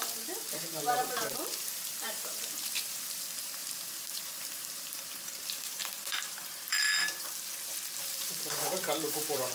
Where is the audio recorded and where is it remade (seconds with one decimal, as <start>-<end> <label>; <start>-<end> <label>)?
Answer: 0.0-6.9 remade; 6.9-8.0 recorded; 8.0-9.5 remade